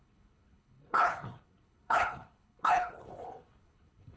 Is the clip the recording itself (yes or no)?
no